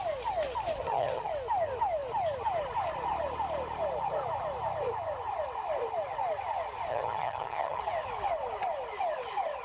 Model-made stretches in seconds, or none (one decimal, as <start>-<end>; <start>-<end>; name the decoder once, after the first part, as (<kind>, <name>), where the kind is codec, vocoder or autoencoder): 0.8-1.3 (vocoder, HiFi-GAN); 6.9-7.8